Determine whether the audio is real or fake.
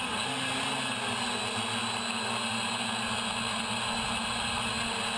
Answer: real